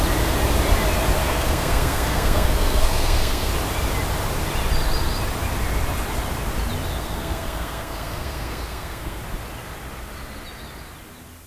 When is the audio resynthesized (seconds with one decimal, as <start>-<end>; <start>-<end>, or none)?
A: 1.2-3.5; 7.0-9.2